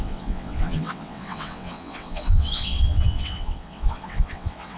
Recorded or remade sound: remade